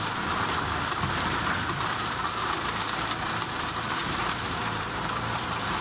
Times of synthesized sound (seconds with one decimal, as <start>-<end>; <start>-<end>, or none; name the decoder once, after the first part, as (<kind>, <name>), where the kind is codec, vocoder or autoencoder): 0.0-5.8 (vocoder, BigVGAN v2)